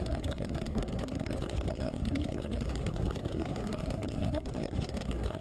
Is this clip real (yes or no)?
no